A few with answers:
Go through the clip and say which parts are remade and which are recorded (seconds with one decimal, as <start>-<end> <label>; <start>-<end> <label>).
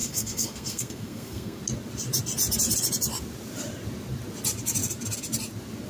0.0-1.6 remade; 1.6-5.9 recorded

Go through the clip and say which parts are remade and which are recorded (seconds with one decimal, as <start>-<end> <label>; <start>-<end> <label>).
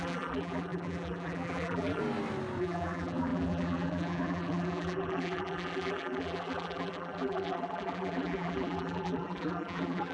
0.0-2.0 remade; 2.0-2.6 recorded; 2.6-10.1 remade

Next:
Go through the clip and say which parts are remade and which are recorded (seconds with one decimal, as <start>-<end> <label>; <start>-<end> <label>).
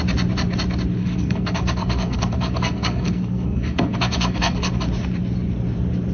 0.0-1.0 recorded; 1.0-4.7 remade; 4.7-6.1 recorded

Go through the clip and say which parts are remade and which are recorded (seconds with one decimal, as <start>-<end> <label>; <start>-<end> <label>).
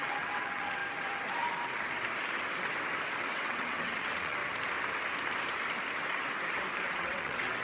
0.0-0.8 remade; 0.8-3.2 recorded; 3.2-4.4 remade; 4.4-7.0 recorded; 7.0-7.6 remade